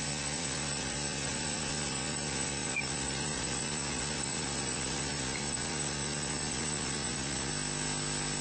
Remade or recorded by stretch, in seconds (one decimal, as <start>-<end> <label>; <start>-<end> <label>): 0.0-7.5 remade; 7.5-8.4 recorded